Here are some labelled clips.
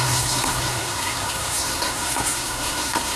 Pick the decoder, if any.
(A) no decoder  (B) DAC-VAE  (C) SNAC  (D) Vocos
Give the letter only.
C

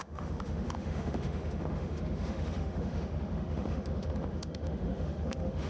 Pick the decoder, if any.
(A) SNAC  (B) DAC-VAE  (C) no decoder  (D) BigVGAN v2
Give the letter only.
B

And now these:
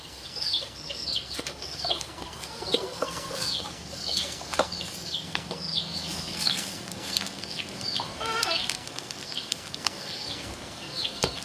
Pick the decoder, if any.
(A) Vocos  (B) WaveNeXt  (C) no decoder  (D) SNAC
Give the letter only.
D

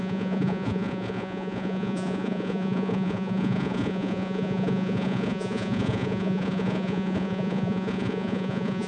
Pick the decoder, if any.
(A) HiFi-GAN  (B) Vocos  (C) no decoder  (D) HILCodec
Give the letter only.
B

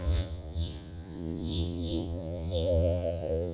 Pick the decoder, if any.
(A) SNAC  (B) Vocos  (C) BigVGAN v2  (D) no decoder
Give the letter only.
B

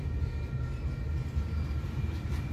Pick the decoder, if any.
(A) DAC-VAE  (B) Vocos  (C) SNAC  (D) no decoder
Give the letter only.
D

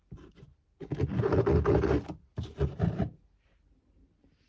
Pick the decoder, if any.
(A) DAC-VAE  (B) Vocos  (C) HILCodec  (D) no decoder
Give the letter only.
D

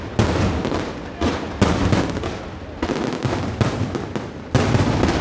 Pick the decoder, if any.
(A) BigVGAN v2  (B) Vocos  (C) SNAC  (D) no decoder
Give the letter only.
D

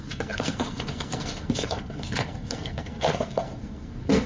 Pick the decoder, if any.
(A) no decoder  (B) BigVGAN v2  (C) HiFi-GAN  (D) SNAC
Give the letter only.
D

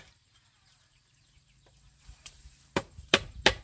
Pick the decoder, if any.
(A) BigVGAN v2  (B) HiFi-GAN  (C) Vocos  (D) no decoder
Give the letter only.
A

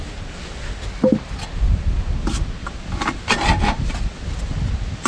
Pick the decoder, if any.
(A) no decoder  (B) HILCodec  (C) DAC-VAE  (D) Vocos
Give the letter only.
A